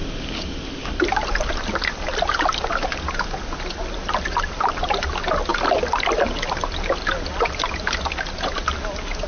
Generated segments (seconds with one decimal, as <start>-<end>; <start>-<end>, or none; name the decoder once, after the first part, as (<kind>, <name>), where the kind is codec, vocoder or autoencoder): 0.0-0.9 (codec, DAC)